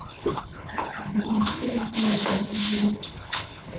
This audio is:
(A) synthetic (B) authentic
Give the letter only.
A